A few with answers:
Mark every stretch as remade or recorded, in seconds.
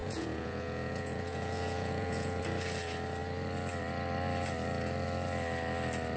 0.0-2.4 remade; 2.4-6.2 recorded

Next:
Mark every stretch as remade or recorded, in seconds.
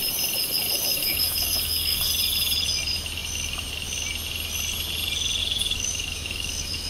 0.0-0.9 recorded; 0.9-2.1 remade; 2.1-5.4 recorded; 5.4-6.9 remade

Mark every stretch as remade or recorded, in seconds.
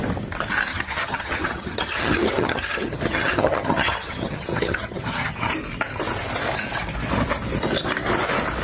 0.0-0.7 recorded; 0.7-5.5 remade; 5.5-8.6 recorded